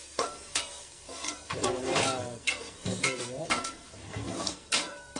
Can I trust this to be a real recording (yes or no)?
no